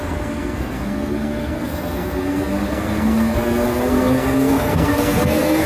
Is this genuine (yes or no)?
no